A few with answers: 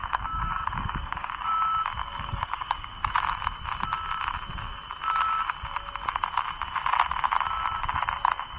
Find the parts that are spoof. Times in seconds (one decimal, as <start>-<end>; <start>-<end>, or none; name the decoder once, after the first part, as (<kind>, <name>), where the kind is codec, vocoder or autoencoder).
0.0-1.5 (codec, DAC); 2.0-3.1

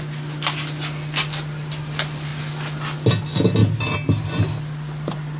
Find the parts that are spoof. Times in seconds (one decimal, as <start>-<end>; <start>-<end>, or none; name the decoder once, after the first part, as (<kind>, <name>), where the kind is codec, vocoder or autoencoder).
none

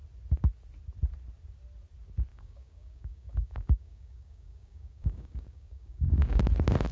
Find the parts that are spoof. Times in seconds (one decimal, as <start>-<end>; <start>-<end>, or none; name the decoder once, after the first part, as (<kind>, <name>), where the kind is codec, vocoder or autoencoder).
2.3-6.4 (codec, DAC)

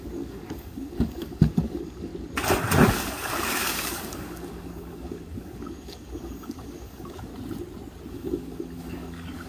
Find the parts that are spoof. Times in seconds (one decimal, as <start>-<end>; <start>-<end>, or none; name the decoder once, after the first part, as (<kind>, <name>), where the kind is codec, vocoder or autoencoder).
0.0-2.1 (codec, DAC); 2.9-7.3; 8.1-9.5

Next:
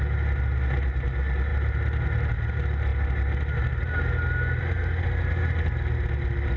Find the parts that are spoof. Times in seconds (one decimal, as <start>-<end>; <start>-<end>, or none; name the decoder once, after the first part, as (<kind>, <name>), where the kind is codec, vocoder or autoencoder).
none